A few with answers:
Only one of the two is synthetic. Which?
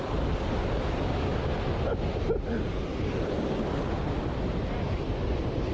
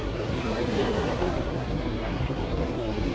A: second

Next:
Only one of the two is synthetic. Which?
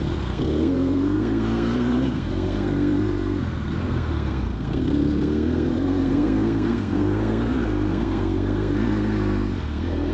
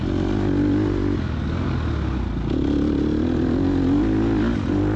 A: first